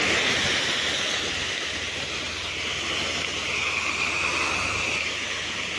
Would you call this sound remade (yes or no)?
no